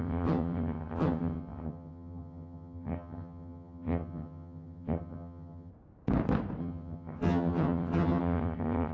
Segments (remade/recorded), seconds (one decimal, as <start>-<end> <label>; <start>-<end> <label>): 0.0-5.7 remade; 5.7-6.6 recorded; 6.6-8.9 remade